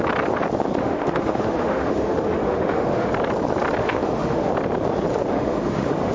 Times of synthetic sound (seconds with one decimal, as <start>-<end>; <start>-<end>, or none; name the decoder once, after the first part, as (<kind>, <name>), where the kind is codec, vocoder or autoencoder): 0.8-3.1 (autoencoder, DAC-VAE); 3.8-4.5; 5.3-6.1